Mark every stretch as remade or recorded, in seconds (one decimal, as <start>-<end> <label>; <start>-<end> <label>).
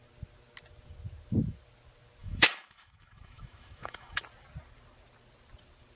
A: 0.0-2.2 recorded; 2.2-4.2 remade; 4.2-6.0 recorded